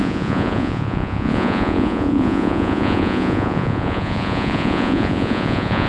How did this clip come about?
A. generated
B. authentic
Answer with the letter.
A